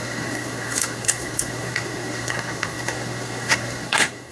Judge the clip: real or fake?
fake